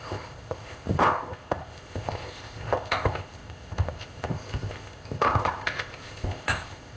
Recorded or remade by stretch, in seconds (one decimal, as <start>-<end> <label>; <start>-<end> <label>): 0.0-7.0 remade